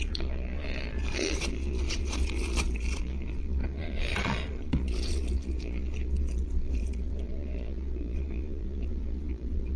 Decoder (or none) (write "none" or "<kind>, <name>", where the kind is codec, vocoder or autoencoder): vocoder, Vocos